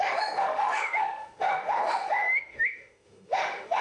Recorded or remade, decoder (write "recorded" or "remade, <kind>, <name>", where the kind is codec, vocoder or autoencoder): remade, autoencoder, DAC-VAE